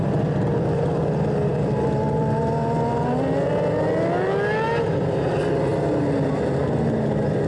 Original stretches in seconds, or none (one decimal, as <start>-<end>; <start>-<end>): 0.0-7.5